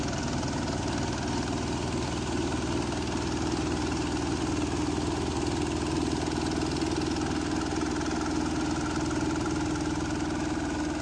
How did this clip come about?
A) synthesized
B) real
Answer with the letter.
B